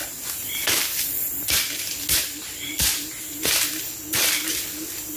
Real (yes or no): yes